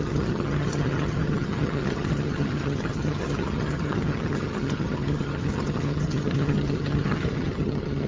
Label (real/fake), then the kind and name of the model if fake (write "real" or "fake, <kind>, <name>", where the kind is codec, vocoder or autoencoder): fake, vocoder, HiFi-GAN